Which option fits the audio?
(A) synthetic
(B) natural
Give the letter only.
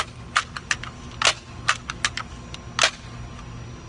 B